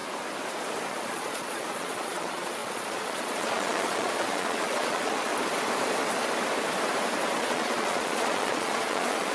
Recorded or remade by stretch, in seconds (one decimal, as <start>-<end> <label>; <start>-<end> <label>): 0.0-0.9 recorded; 0.9-5.3 remade; 5.3-7.4 recorded; 7.4-9.3 remade